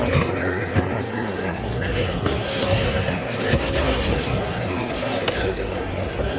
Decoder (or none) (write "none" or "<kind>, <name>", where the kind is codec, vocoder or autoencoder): codec, SNAC